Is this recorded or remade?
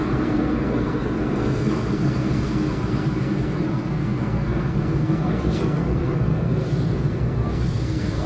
remade